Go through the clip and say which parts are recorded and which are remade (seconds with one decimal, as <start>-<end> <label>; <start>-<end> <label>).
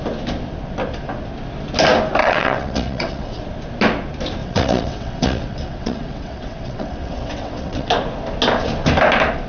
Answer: 0.0-2.2 recorded; 2.2-3.4 remade; 3.4-4.4 recorded; 4.4-7.9 remade; 7.9-9.5 recorded